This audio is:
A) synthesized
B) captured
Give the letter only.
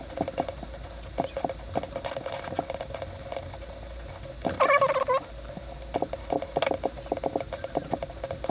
B